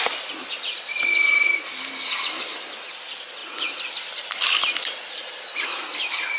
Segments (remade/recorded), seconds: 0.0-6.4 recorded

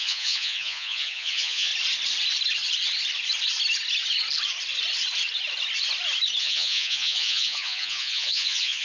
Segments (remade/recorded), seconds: 0.0-1.7 remade; 1.7-6.4 recorded; 6.4-8.8 remade

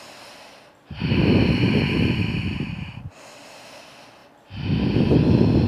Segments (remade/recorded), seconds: 0.0-5.7 recorded

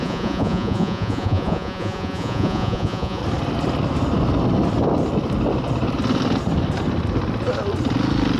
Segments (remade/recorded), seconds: 0.0-3.2 remade; 3.2-8.4 recorded

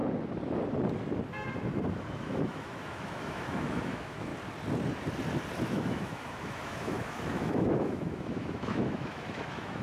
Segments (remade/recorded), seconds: 0.0-2.2 recorded; 2.2-4.3 remade; 4.3-5.6 recorded; 5.6-9.8 remade

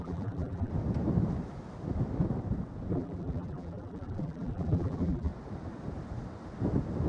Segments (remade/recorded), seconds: 0.0-0.7 remade; 0.7-2.9 recorded; 2.9-5.3 remade; 5.3-7.1 recorded

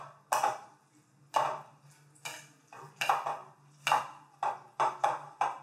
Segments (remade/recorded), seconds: 0.0-5.6 recorded

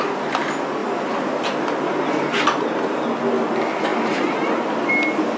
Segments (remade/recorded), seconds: 0.0-3.9 recorded; 3.9-4.9 remade; 4.9-5.4 recorded